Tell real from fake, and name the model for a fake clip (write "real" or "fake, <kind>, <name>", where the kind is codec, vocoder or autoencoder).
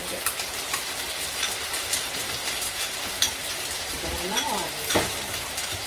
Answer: fake, vocoder, BigVGAN v2